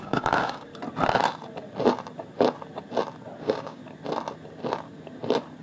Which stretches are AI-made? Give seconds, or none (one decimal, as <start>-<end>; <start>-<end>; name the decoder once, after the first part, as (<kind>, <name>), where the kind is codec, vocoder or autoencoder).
0.0-0.7 (codec, DAC); 3.4-3.8